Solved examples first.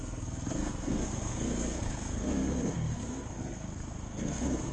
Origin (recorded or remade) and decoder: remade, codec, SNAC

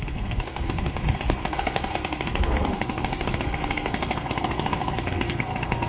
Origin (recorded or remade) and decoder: remade, codec, SNAC